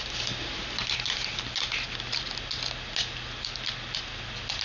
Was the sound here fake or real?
real